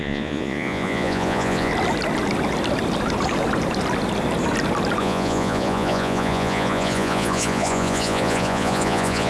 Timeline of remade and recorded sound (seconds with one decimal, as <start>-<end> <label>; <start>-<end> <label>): 0.0-1.7 remade; 1.7-5.0 recorded; 5.0-9.3 remade